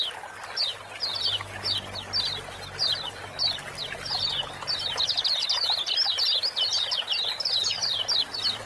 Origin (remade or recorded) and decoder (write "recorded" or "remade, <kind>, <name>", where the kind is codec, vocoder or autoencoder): recorded